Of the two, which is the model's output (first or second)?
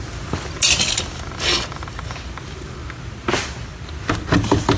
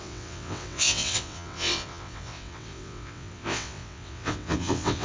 second